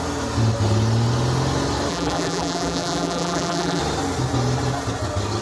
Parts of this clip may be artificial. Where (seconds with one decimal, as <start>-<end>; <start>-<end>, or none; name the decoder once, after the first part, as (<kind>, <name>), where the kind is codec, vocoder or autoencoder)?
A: 1.9-3.8 (vocoder, BigVGAN v2)